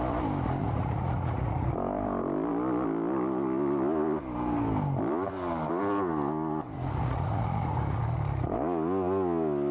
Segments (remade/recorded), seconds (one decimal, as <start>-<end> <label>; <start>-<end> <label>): 0.0-0.6 recorded; 0.6-1.7 remade; 1.7-7.0 recorded; 7.0-8.0 remade; 8.0-9.7 recorded